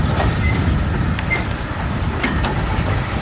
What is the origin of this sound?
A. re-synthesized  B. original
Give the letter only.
B